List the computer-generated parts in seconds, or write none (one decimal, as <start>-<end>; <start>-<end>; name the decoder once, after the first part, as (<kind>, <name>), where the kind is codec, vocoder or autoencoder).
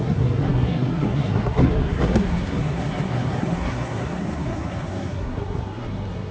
0.0-6.3 (codec, SNAC)